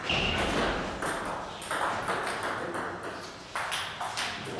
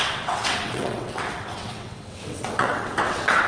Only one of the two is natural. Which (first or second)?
first